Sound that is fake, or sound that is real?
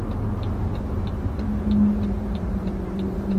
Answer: real